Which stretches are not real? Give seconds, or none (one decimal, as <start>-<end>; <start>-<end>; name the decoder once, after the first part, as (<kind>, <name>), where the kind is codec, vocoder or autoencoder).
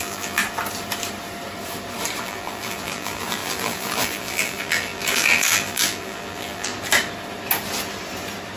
0.0-0.4 (vocoder, BigVGAN v2); 2.2-6.7